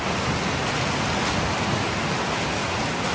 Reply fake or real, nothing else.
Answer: real